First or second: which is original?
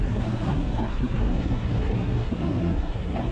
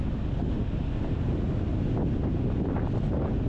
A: second